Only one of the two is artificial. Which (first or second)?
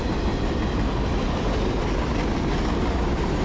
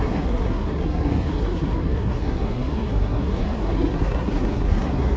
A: second